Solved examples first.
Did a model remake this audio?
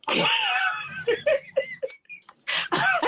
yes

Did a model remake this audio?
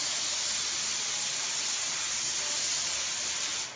no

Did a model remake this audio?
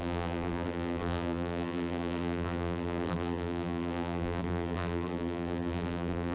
yes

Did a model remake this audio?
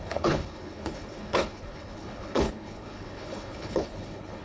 yes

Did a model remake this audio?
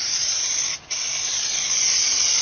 no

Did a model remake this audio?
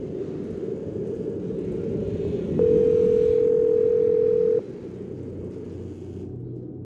no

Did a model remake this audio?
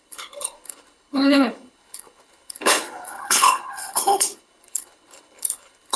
yes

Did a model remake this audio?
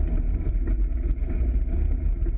no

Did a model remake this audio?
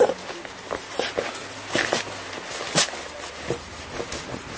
no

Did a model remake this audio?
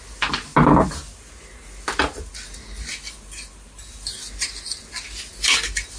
no